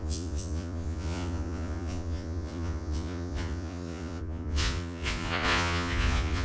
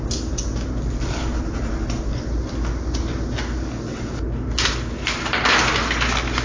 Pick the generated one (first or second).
first